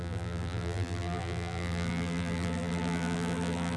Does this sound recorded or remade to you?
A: remade